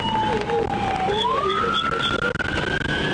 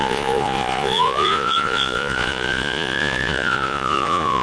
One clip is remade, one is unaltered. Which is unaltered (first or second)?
first